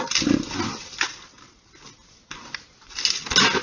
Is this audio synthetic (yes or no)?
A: no